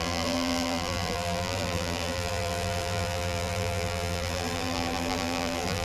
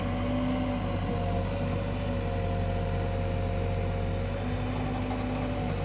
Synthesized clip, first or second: first